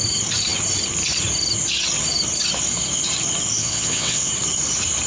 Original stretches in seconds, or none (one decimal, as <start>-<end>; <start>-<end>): 0.0-3.6; 4.3-5.1